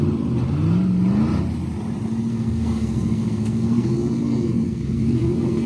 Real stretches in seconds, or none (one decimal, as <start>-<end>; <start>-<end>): 0.0-2.3